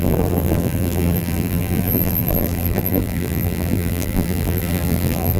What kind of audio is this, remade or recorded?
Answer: remade